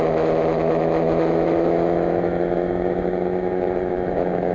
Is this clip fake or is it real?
fake